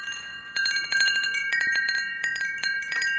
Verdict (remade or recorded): remade